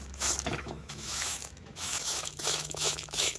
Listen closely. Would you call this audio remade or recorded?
remade